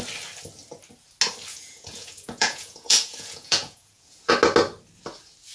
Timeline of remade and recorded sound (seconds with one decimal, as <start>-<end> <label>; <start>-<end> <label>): 0.0-1.5 recorded; 1.5-4.3 remade; 4.3-5.5 recorded